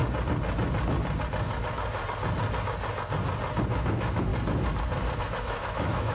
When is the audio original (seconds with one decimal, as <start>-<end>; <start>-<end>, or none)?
0.0-3.7; 4.3-5.2